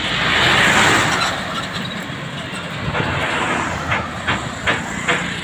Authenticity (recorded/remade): recorded